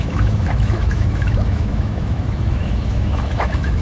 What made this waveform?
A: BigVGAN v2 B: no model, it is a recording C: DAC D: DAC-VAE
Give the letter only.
D